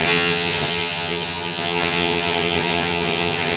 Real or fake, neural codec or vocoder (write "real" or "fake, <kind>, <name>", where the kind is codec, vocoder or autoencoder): fake, vocoder, HiFi-GAN